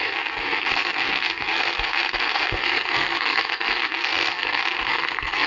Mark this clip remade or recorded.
remade